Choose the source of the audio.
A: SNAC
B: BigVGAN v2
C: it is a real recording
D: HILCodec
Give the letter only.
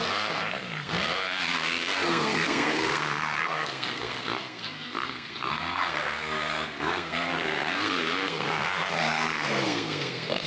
A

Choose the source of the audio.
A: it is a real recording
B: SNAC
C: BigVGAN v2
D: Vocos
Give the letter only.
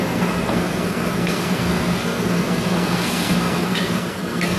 B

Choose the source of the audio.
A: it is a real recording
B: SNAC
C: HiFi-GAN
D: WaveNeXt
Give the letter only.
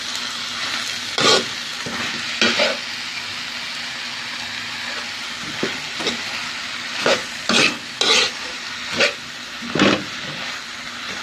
A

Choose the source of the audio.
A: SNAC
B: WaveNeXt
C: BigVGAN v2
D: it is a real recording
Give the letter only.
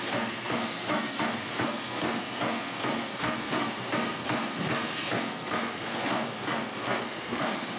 A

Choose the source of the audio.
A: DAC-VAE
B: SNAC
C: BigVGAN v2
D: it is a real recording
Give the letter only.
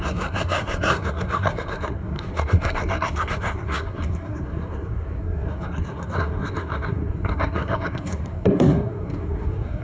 B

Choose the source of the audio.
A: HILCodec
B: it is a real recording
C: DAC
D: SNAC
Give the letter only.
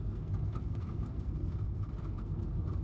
D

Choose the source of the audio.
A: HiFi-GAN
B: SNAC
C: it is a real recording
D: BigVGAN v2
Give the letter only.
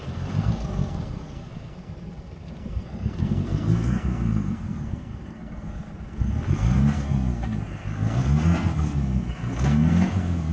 B